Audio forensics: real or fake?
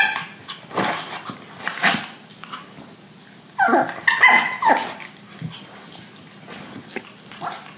real